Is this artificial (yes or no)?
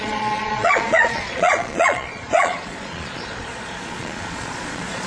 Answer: yes